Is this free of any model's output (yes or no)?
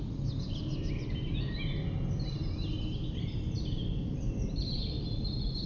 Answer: yes